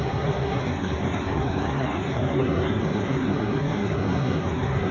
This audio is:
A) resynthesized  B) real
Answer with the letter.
A